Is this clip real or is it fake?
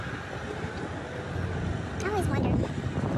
real